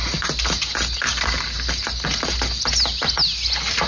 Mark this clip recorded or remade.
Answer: recorded